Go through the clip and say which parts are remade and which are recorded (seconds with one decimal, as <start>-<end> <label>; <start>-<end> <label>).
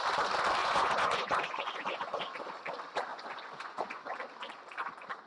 0.0-0.6 recorded; 0.6-2.2 remade; 2.2-3.1 recorded; 3.1-4.1 remade; 4.1-5.3 recorded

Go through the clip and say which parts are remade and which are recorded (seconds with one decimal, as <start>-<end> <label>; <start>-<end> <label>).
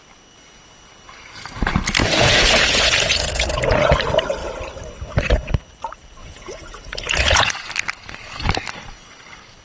0.0-2.0 recorded; 2.0-4.0 remade; 4.0-6.2 recorded; 6.2-7.5 remade; 7.5-9.6 recorded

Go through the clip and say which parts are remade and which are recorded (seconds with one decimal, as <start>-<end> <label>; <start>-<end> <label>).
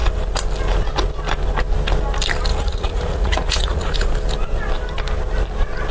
0.0-2.5 recorded; 2.5-4.1 remade; 4.1-5.9 recorded